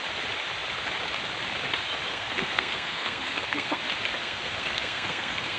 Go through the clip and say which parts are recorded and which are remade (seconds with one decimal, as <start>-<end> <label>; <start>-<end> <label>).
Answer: 0.0-2.1 recorded; 2.1-3.8 remade; 3.8-4.2 recorded; 4.2-5.6 remade